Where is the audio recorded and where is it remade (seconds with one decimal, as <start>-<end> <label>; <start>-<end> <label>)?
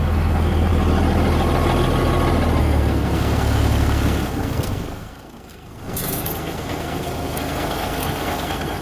0.0-0.7 remade; 0.7-2.6 recorded; 2.6-8.8 remade